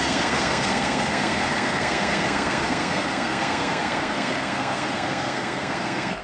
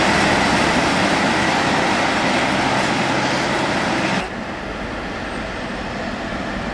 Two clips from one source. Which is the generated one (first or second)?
first